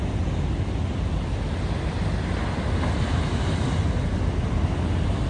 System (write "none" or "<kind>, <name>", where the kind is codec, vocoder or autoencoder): none